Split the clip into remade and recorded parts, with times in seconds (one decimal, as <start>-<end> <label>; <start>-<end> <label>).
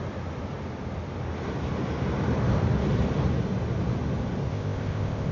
0.0-4.5 recorded; 4.5-5.3 remade